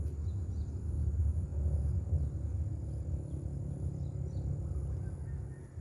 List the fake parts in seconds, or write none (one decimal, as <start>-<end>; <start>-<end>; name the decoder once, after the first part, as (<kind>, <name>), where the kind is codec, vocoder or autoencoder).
none